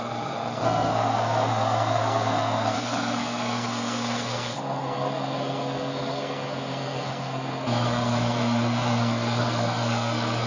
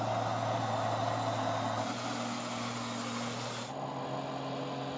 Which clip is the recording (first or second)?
second